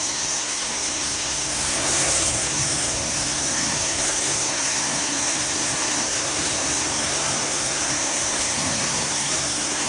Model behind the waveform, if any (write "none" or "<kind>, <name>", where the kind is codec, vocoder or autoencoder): codec, SNAC